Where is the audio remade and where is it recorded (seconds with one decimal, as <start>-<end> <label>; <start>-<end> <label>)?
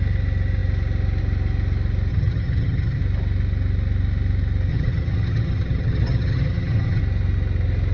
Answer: 0.0-2.1 recorded; 2.1-3.0 remade; 3.0-4.7 recorded; 4.7-7.0 remade; 7.0-7.9 recorded